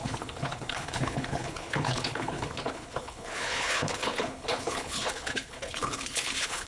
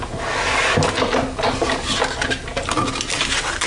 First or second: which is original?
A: second